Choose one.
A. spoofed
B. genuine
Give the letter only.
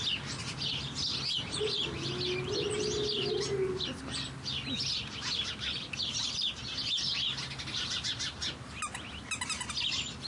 B